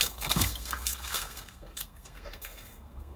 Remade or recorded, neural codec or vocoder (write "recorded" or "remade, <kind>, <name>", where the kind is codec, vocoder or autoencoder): remade, codec, SNAC